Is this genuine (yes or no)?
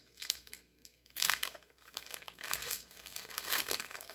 no